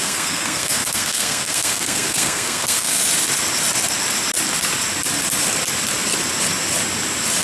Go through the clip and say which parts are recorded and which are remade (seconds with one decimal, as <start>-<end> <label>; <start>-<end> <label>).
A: 0.0-3.0 remade; 3.0-7.4 recorded